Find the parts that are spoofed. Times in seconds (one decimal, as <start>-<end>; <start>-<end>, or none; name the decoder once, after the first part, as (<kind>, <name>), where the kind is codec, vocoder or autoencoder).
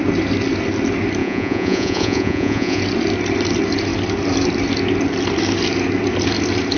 1.2-2.8 (vocoder, Vocos)